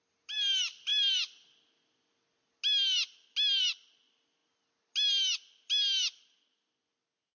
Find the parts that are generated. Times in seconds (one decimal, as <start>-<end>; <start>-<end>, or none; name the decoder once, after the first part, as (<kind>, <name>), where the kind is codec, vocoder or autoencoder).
none